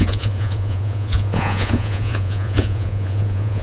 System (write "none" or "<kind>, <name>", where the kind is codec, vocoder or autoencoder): vocoder, Vocos